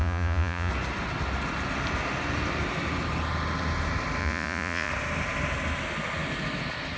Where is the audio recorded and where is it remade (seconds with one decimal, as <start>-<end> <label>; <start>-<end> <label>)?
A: 0.0-0.7 remade; 0.7-4.2 recorded; 4.2-4.9 remade; 4.9-7.0 recorded